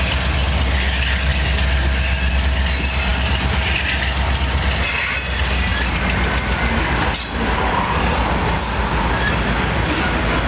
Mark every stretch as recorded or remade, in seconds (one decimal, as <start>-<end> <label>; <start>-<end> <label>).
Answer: 0.0-5.7 recorded; 5.7-7.7 remade; 7.7-10.5 recorded